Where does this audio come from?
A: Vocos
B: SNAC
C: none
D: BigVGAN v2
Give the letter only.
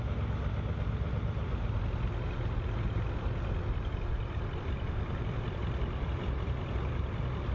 C